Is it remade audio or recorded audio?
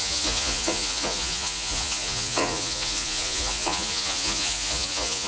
remade